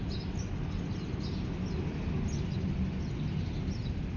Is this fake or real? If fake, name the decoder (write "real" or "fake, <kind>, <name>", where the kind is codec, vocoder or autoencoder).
real